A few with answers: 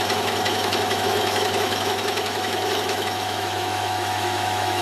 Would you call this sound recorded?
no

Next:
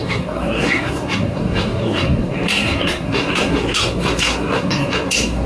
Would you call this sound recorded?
no